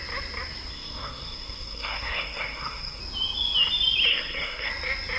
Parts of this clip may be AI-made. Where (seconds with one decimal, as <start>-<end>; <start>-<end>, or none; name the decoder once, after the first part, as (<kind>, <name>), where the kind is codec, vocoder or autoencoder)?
0.7-3.0 (codec, SNAC); 4.1-4.7